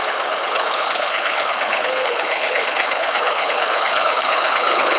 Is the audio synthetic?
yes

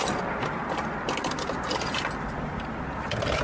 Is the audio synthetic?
no